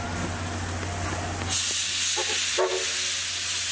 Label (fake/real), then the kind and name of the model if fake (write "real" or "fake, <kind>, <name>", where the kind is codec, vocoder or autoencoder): real